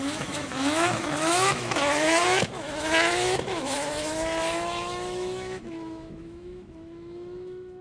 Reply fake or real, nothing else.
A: fake